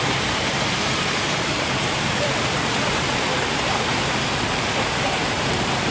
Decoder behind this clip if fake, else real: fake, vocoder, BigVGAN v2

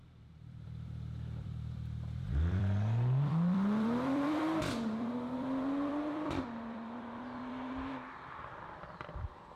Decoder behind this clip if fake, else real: fake, vocoder, BigVGAN v2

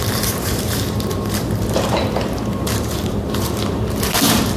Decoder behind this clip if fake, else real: fake, vocoder, BigVGAN v2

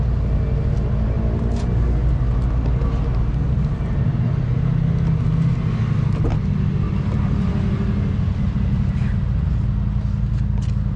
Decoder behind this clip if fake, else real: real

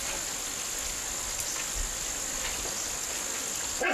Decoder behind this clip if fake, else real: real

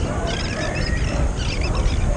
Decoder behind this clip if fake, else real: fake, vocoder, BigVGAN v2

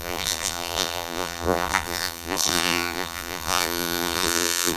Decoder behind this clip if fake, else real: fake, vocoder, BigVGAN v2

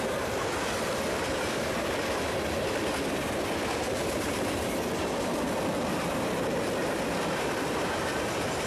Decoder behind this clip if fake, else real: fake, vocoder, BigVGAN v2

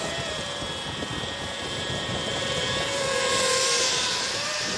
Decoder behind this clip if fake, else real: fake, vocoder, BigVGAN v2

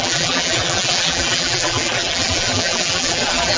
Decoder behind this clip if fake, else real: fake, vocoder, BigVGAN v2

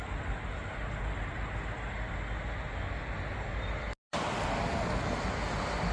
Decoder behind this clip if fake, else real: real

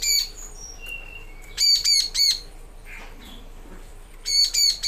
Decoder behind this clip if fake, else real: fake, vocoder, BigVGAN v2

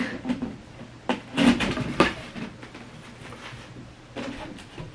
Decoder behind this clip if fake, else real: fake, vocoder, BigVGAN v2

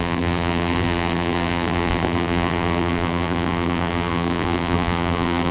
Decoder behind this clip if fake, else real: fake, vocoder, BigVGAN v2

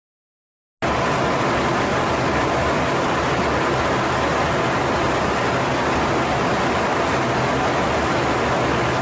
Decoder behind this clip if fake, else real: real